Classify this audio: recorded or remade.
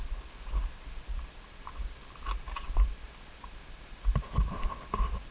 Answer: recorded